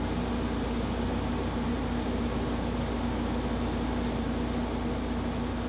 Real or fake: real